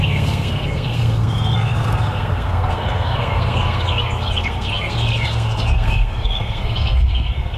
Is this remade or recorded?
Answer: remade